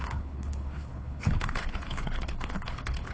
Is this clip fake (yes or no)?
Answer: yes